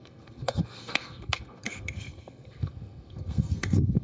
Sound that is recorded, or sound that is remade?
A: remade